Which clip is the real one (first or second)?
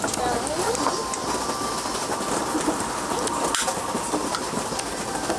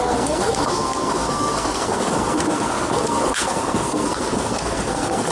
first